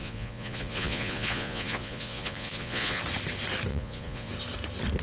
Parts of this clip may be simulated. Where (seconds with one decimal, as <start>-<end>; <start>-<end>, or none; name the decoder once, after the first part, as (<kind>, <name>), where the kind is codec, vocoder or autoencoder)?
0.0-3.0 (vocoder, Vocos); 3.7-4.3